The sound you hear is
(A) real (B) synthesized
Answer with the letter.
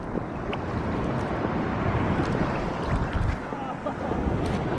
A